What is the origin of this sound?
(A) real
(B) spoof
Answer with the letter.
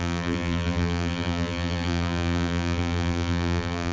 B